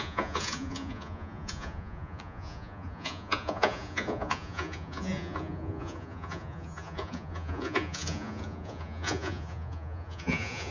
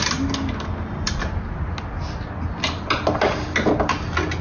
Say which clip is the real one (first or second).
second